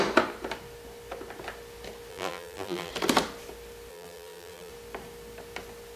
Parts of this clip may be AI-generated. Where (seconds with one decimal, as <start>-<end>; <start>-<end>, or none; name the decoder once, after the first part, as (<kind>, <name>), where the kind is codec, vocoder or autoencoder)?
2.1-2.9 (vocoder, BigVGAN v2); 3.9-4.7